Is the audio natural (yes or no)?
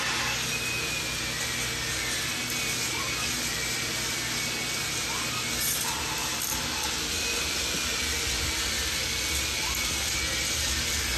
yes